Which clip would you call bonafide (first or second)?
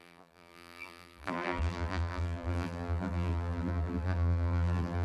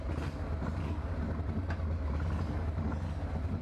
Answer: second